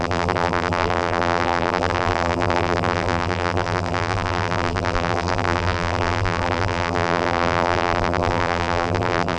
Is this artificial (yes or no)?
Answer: yes